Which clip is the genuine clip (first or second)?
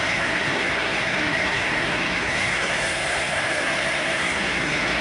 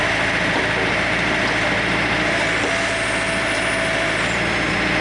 second